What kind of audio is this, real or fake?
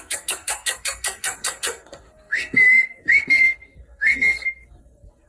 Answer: fake